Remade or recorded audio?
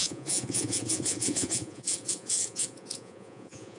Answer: remade